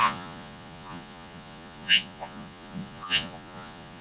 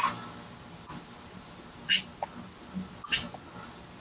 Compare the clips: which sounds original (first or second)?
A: second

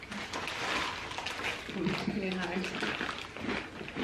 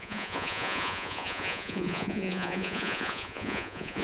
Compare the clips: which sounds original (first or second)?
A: first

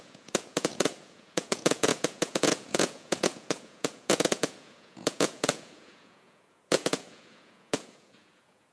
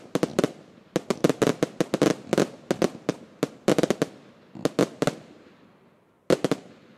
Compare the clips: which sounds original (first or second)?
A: second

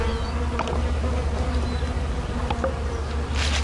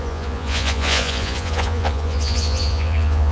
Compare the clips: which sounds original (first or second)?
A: first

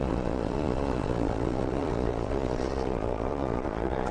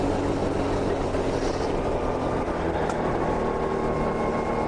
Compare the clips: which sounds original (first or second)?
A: second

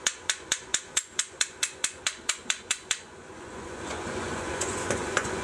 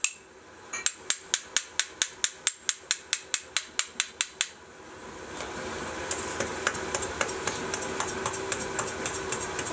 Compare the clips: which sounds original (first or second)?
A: second